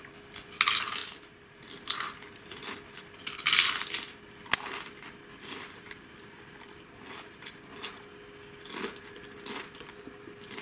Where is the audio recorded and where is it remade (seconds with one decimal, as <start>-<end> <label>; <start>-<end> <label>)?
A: 0.0-1.0 recorded; 1.0-1.6 remade; 1.6-10.6 recorded